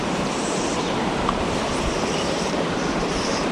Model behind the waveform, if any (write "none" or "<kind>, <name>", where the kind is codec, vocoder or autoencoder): vocoder, BigVGAN v2